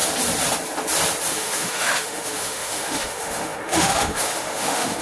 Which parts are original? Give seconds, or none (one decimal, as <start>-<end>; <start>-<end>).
0.0-1.3